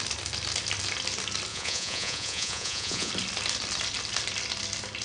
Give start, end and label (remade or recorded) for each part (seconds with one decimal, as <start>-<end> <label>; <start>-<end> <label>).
0.0-1.5 recorded; 1.5-3.1 remade; 3.1-5.0 recorded